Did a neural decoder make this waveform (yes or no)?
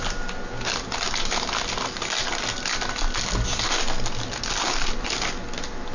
no